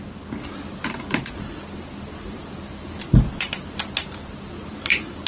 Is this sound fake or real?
fake